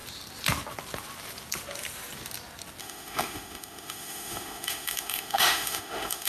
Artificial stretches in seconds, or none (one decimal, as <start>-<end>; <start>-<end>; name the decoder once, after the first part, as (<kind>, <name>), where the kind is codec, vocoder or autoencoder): 2.8-6.3 (autoencoder, DAC-VAE)